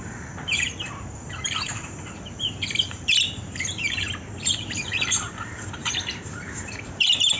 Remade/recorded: remade